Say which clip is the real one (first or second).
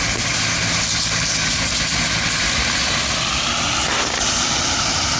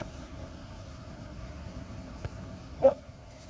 first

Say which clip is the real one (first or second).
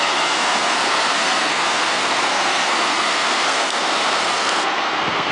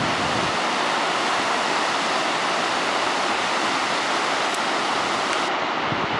second